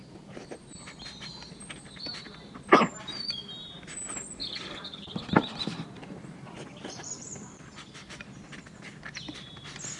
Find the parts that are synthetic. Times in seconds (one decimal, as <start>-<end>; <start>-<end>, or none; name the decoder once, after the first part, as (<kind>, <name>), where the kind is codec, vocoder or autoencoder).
4.4-8.4 (vocoder, BigVGAN v2)